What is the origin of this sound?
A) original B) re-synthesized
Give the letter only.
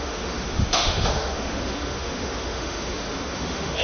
B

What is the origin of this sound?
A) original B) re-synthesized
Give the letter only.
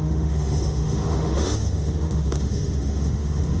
B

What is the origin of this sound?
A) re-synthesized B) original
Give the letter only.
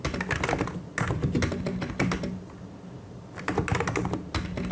B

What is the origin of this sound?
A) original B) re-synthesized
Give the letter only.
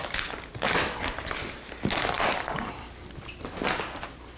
A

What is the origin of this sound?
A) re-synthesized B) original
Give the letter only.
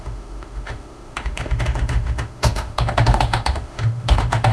A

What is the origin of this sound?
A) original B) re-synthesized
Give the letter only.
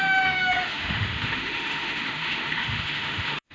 B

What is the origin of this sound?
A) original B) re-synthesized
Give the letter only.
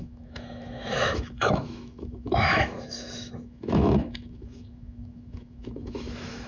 B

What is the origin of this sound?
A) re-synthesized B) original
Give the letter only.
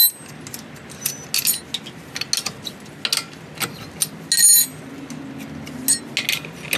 B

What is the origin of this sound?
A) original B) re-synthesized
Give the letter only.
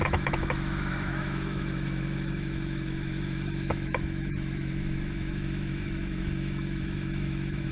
B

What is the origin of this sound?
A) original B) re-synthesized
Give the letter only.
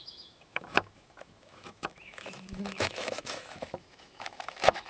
B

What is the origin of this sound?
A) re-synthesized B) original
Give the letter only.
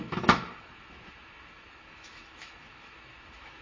A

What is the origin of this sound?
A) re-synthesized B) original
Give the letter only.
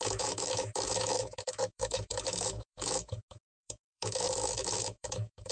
A